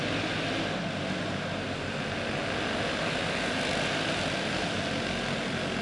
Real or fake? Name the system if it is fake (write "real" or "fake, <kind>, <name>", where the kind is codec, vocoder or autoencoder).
real